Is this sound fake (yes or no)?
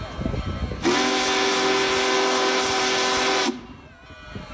no